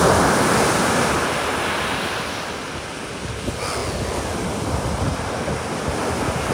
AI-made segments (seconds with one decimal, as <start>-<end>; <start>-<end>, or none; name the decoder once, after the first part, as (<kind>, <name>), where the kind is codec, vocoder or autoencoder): none